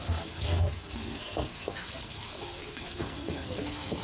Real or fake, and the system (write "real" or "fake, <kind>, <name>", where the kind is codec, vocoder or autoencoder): fake, codec, SNAC